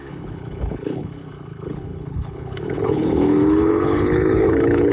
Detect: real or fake fake